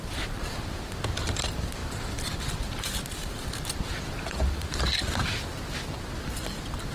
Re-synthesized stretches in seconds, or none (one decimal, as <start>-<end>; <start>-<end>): 0.0-0.9; 3.2-6.0